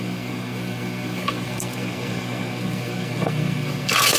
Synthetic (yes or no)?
yes